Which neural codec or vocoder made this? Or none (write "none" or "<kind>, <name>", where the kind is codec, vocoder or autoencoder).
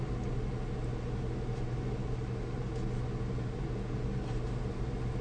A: none